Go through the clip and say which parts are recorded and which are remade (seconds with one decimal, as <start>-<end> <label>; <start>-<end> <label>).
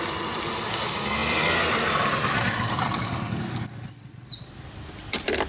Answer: 0.0-1.2 recorded; 1.2-4.5 remade; 4.5-5.5 recorded